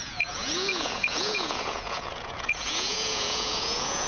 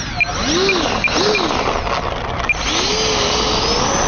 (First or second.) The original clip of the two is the second